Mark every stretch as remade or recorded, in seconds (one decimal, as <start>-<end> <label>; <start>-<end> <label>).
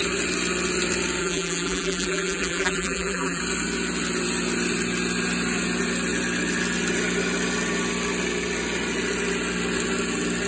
0.0-1.2 recorded; 1.2-3.4 remade; 3.4-10.5 recorded